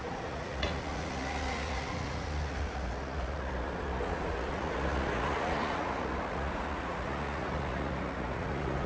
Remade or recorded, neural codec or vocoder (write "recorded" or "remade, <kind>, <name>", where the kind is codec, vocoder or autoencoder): remade, vocoder, Vocos